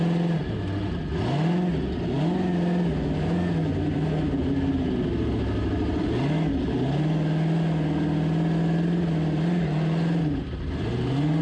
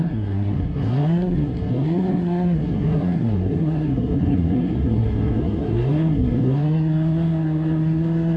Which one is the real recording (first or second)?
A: first